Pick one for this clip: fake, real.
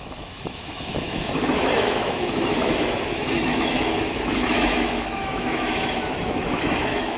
fake